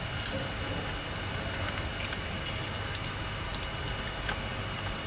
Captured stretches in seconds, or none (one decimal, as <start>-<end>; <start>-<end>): 0.0-5.1